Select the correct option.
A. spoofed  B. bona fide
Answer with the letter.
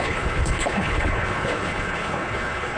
A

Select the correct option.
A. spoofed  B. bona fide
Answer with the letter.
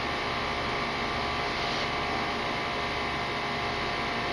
B